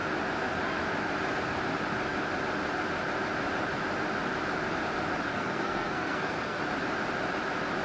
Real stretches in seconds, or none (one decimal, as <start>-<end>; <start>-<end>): 0.0-5.3; 6.6-7.8